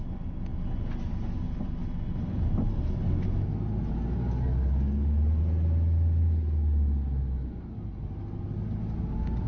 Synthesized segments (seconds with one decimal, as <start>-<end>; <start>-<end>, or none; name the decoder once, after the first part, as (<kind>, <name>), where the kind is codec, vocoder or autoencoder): none